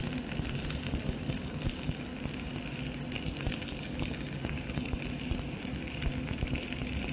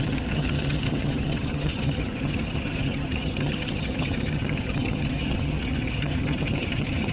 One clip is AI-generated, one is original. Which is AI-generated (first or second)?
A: second